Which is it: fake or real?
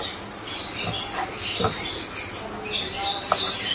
real